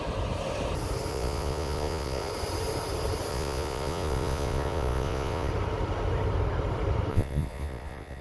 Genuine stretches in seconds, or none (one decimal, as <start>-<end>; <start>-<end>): 0.0-1.1; 2.3-3.3; 5.5-7.1